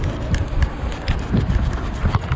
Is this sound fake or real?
real